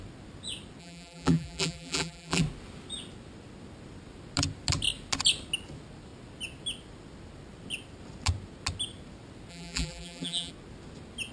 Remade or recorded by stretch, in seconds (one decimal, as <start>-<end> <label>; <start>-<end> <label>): 0.0-0.8 recorded; 0.8-2.4 remade; 2.4-9.5 recorded; 9.5-10.5 remade; 10.5-11.3 recorded